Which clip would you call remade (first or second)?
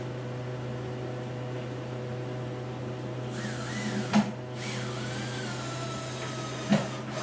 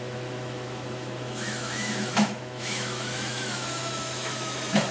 second